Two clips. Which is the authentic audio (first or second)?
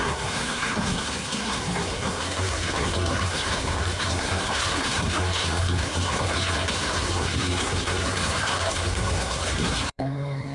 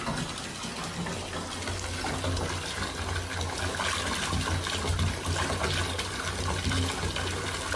second